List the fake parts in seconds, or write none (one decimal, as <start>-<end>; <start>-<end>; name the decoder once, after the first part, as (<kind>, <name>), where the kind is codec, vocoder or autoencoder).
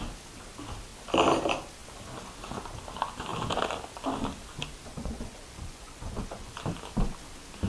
4.9-6.6 (vocoder, Vocos)